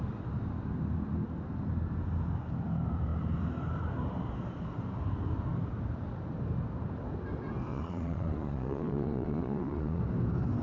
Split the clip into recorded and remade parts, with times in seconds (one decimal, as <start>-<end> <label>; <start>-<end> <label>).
0.0-7.7 recorded; 7.7-10.0 remade; 10.0-10.6 recorded